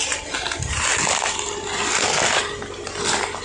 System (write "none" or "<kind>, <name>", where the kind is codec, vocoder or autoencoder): none